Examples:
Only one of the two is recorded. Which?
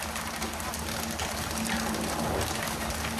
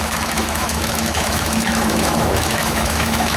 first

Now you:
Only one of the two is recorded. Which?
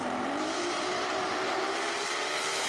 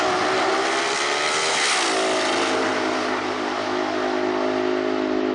second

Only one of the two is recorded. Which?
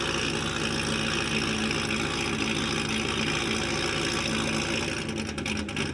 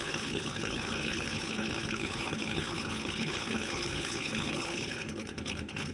first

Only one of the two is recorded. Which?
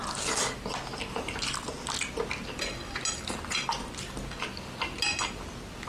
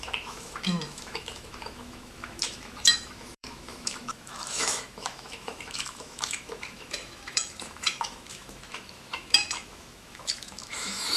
first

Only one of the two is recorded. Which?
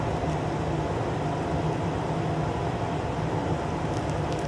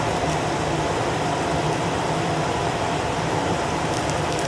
first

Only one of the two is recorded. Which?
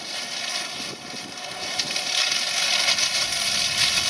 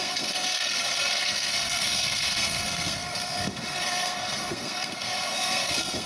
first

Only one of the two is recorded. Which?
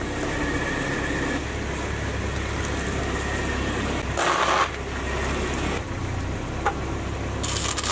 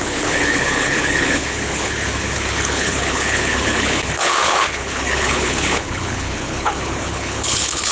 first